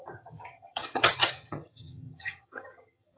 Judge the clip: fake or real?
fake